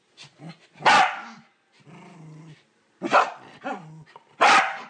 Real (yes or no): yes